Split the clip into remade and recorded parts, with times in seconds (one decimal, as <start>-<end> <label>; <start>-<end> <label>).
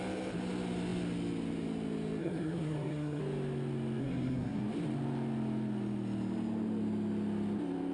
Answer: 0.0-2.2 recorded; 2.2-3.2 remade; 3.2-4.0 recorded; 4.0-4.6 remade; 4.6-7.9 recorded